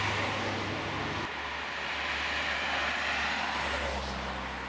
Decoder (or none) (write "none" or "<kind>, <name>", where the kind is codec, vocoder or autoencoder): none